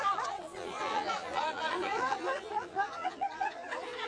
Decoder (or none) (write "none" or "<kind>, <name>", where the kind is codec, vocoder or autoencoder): vocoder, Vocos